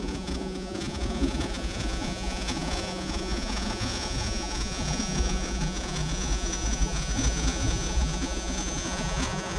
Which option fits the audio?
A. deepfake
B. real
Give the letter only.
A